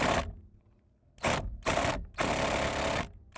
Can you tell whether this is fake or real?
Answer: real